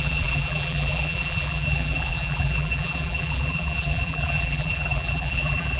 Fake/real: fake